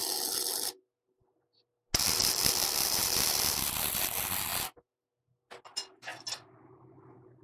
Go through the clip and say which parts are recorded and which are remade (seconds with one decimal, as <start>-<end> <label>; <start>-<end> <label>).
0.0-7.4 recorded